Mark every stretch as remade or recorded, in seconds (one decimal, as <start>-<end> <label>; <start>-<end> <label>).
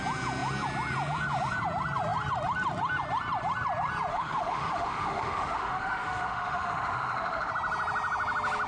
0.0-4.1 recorded; 4.1-7.5 remade; 7.5-8.7 recorded